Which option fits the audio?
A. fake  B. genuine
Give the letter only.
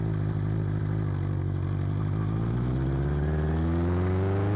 B